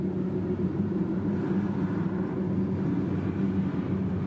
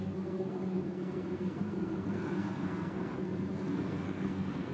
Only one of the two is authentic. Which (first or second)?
first